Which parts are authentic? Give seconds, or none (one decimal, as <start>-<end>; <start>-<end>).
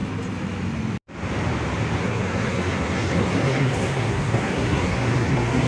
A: 0.0-2.0